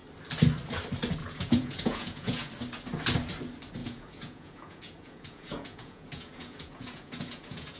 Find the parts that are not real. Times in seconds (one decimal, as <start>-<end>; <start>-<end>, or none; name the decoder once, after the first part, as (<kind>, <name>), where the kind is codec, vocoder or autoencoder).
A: 1.2-2.5 (vocoder, Vocos); 3.8-7.8